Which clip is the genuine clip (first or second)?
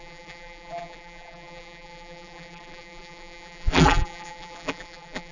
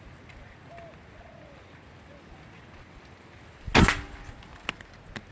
second